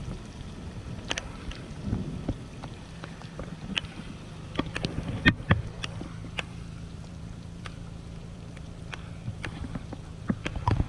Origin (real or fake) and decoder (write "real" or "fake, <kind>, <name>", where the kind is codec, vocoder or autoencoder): fake, vocoder, BigVGAN v2